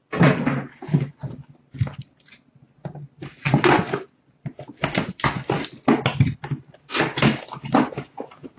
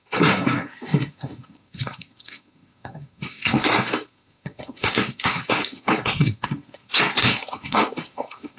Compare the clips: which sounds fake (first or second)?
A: second